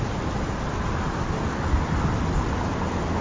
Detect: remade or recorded recorded